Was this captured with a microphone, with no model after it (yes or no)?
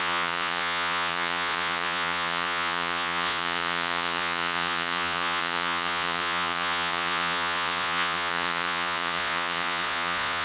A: no